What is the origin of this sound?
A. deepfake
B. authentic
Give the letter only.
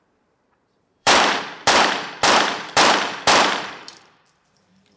A